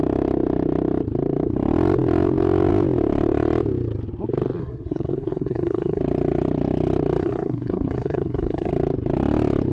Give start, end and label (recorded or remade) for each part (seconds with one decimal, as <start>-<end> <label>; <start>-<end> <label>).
0.0-4.6 recorded; 4.6-6.0 remade; 6.0-7.2 recorded; 7.2-8.7 remade; 8.7-9.7 recorded